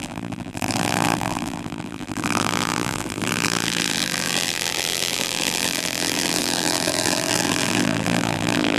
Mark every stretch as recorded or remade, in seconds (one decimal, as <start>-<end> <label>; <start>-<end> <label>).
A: 0.0-8.8 remade

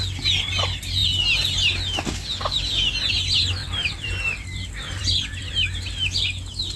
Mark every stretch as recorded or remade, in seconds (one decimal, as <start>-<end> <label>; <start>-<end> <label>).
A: 0.0-3.6 recorded; 3.6-5.5 remade; 5.5-6.8 recorded

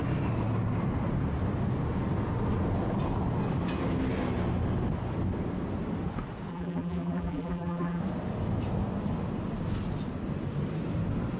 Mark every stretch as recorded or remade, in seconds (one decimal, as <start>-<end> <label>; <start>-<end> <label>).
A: 0.0-6.5 recorded; 6.5-8.0 remade; 8.0-11.4 recorded

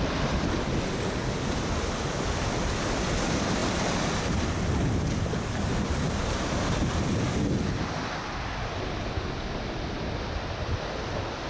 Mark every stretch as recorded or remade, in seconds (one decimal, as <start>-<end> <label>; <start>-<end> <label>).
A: 0.0-11.5 recorded

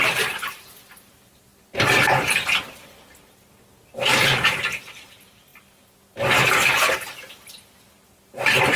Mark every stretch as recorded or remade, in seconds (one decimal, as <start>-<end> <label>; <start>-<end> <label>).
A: 0.0-8.8 recorded